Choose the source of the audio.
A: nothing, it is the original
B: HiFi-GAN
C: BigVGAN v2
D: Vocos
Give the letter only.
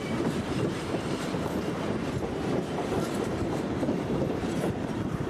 C